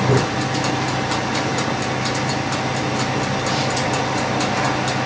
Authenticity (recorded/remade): recorded